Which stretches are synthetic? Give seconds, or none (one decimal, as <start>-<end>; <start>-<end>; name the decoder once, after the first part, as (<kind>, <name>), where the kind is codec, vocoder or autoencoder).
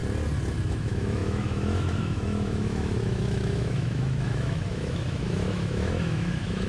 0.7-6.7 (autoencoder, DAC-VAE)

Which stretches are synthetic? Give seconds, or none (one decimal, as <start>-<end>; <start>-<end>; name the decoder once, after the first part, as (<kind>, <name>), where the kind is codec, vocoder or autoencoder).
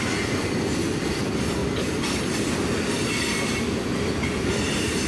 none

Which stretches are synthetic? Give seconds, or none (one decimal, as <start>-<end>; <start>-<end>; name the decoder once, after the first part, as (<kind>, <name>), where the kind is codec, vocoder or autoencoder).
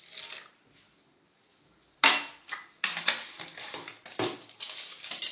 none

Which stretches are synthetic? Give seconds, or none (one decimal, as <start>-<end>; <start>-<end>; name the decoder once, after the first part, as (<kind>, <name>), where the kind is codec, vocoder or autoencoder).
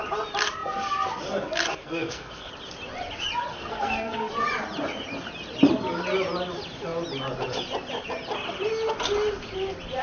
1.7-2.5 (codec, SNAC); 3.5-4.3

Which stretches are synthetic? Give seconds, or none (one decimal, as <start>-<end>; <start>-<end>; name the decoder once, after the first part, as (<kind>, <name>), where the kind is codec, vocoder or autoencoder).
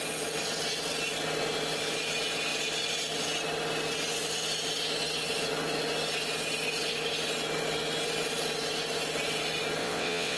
9.8-10.4 (vocoder, WaveNeXt)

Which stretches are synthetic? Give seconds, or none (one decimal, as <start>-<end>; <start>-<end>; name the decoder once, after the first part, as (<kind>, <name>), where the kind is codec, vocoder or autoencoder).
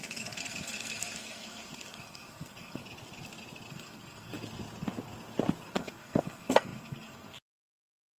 0.0-2.8 (codec, SNAC); 3.7-4.3; 5.7-8.2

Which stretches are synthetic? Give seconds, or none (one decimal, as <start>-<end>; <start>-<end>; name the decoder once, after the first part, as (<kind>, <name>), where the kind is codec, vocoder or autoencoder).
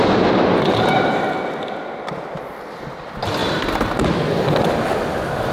none